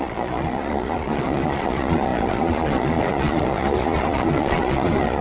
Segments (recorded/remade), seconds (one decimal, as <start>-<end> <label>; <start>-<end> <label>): 0.0-5.2 remade

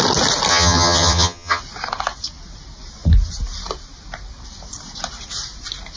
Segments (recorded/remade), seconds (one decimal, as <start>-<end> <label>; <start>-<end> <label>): 0.0-0.5 recorded; 0.5-1.6 remade; 1.6-6.0 recorded

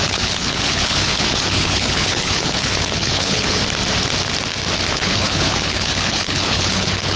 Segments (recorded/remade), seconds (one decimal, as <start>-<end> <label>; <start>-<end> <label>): 0.0-3.6 remade; 3.6-4.9 recorded; 4.9-7.2 remade

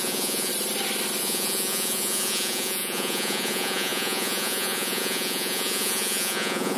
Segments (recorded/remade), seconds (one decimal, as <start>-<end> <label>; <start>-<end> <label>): 0.0-0.5 remade; 0.5-1.2 recorded; 1.2-6.8 remade

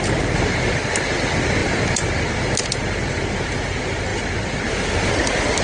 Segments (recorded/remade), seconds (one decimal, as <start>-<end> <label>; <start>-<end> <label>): 0.0-5.6 recorded

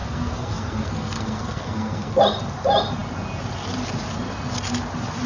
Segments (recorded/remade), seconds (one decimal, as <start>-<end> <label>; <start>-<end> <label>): 0.0-2.2 remade; 2.2-5.3 recorded

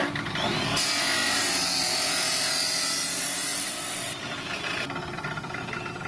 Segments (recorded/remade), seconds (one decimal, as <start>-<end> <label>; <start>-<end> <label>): 0.0-6.1 recorded